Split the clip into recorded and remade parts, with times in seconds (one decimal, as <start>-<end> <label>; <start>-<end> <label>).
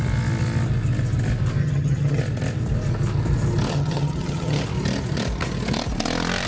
0.0-1.6 recorded; 1.6-2.2 remade; 2.2-3.7 recorded; 3.7-4.6 remade; 4.6-6.5 recorded